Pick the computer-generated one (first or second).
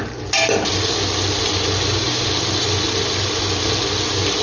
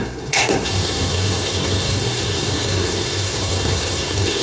second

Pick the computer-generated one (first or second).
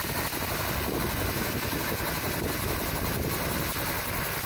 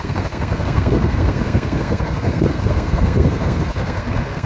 second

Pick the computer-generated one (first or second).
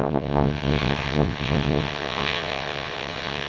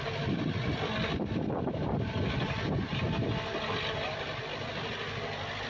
first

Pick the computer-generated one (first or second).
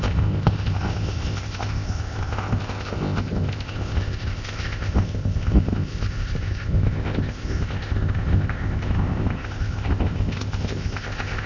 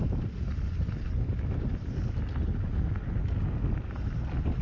first